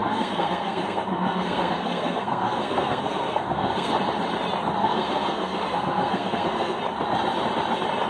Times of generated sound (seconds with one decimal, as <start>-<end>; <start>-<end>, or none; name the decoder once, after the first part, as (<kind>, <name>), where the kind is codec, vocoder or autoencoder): 0.0-3.9 (codec, SNAC); 4.8-6.8